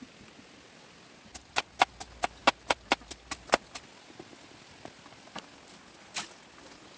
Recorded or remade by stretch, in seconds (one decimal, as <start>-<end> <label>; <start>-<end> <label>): 0.0-7.0 recorded